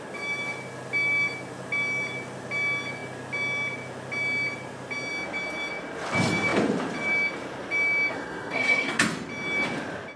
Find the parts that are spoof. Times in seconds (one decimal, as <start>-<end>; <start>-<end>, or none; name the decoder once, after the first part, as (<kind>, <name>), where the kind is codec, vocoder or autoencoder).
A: 8.1-8.9 (codec, SNAC)